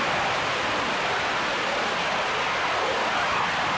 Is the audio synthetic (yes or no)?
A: no